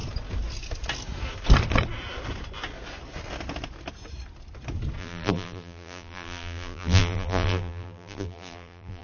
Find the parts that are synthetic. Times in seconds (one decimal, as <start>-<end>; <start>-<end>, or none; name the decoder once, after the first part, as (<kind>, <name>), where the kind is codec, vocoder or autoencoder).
5.0-9.0 (vocoder, BigVGAN v2)